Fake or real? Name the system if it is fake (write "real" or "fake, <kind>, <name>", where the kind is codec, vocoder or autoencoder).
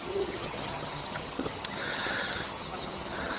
fake, vocoder, HiFi-GAN